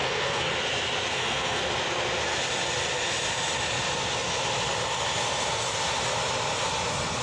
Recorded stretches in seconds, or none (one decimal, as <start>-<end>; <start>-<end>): 0.5-1.1; 1.6-7.2